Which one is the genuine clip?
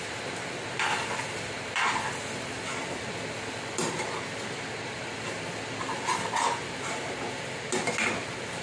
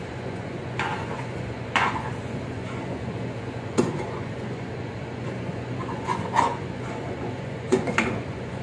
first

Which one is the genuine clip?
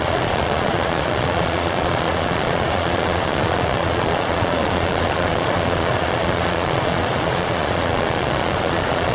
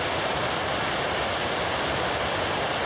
second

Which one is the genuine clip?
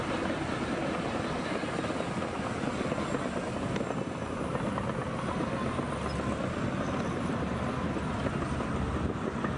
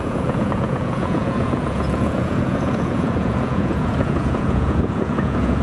first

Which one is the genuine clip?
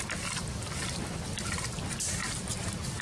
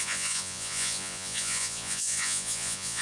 first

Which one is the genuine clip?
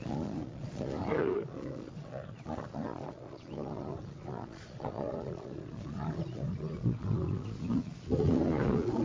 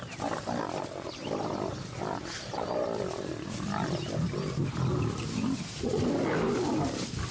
second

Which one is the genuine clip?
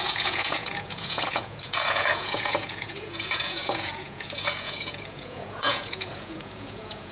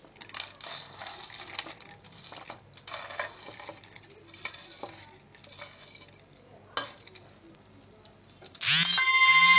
second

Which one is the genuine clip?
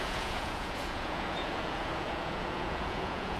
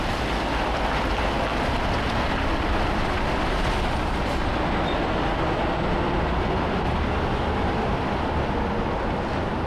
second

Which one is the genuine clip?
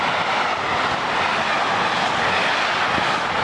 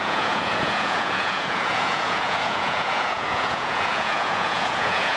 first